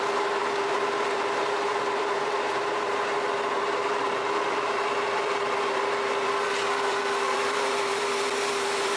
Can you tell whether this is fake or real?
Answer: fake